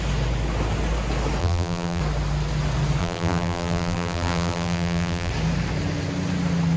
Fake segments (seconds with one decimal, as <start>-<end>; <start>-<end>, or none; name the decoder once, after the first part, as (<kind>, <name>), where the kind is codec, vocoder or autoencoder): 1.4-2.0 (vocoder, BigVGAN v2); 3.0-5.3